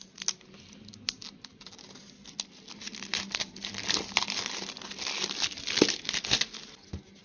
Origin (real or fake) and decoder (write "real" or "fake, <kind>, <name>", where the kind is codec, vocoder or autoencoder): real